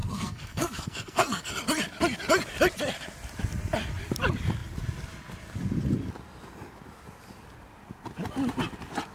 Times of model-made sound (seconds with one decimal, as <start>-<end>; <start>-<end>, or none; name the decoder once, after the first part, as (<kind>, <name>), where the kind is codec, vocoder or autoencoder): 0.0-1.5 (codec, SNAC)

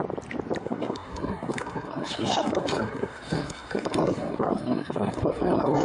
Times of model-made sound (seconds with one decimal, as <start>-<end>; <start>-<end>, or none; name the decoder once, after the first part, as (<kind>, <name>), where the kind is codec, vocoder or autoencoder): 0.6-5.8 (codec, SNAC)

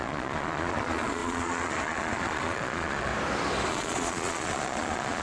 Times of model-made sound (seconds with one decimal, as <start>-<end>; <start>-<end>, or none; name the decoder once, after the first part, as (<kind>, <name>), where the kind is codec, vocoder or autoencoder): 0.0-3.1 (vocoder, Vocos); 3.7-5.2

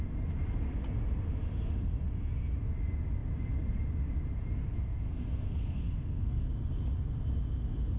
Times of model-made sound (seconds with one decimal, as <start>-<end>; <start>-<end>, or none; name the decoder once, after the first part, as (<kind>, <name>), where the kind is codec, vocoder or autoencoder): 4.7-6.4 (codec, SNAC)

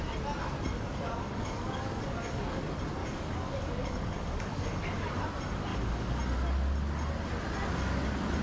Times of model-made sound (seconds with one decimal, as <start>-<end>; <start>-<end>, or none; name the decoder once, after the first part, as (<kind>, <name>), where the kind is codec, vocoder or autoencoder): 0.7-2.6 (codec, DAC); 3.0-5.2; 5.7-6.2